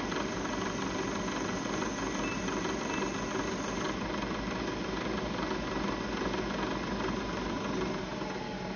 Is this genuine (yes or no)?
yes